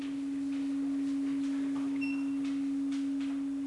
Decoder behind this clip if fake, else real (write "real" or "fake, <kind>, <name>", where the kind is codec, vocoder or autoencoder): real